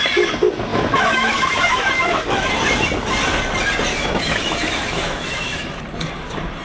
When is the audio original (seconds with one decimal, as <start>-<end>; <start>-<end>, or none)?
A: 0.0-0.7; 2.5-3.9; 5.8-6.6